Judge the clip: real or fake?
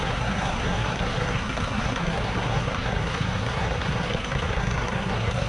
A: fake